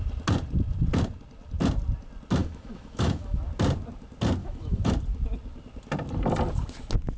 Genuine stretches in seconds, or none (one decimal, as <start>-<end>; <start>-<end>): 0.0-2.4; 3.4-4.4; 4.9-7.2